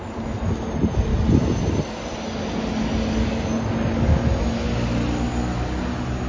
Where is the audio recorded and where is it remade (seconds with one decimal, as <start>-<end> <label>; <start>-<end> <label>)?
0.0-6.3 recorded